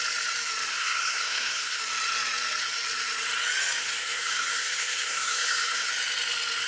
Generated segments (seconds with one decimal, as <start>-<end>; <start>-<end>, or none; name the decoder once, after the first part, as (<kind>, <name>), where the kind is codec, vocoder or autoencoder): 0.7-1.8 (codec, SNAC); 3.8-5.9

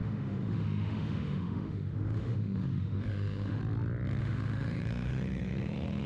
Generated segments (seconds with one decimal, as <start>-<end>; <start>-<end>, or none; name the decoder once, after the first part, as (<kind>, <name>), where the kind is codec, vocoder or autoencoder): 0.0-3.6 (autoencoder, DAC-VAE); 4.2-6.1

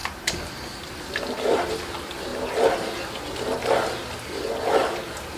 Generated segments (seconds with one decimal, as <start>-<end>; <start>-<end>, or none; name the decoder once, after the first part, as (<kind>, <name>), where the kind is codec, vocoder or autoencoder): none

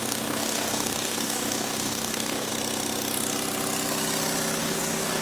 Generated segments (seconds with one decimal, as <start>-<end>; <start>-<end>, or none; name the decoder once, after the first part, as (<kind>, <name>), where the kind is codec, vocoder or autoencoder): 0.0-2.5 (codec, DAC); 4.6-5.2